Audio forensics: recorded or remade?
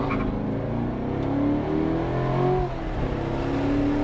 recorded